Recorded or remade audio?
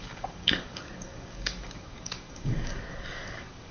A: remade